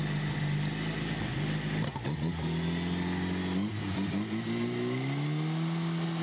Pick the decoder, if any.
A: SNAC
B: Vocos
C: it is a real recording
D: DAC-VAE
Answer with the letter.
C